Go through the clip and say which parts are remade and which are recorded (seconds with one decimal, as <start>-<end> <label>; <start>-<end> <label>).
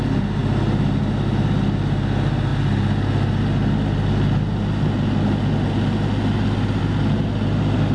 0.0-7.9 recorded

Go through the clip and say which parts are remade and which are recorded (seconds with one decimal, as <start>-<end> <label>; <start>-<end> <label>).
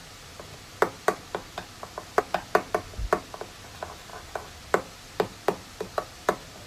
0.0-2.2 remade; 2.2-4.1 recorded; 4.1-6.7 remade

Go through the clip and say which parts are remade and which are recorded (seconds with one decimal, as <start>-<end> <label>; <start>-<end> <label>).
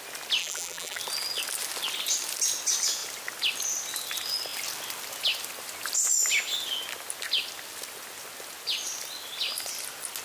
0.0-0.4 recorded; 0.4-1.0 remade; 1.0-10.2 recorded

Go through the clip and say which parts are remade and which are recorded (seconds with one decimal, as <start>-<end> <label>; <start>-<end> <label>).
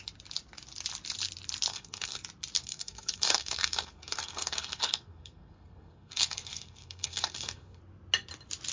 0.0-1.7 recorded; 1.7-2.2 remade; 2.2-2.6 recorded; 2.6-7.8 remade; 7.8-8.7 recorded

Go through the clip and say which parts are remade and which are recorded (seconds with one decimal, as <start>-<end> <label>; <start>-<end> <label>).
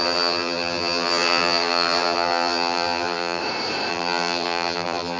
0.0-3.4 remade; 3.4-3.9 recorded; 3.9-5.2 remade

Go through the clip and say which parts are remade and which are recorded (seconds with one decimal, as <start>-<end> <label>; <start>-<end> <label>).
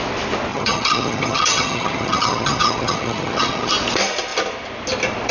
0.0-0.5 recorded; 0.5-3.7 remade; 3.7-5.3 recorded